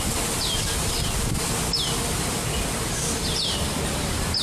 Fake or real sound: fake